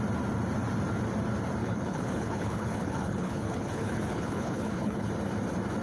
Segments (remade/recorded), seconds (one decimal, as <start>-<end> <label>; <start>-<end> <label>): 0.0-1.6 recorded; 1.6-5.1 remade; 5.1-5.8 recorded